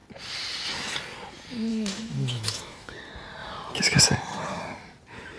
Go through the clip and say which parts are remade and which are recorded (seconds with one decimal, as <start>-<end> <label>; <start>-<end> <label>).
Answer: 0.0-1.7 recorded; 1.7-2.9 remade; 2.9-5.4 recorded